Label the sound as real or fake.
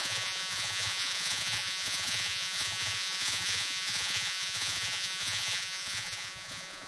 fake